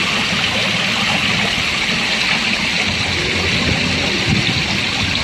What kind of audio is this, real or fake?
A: real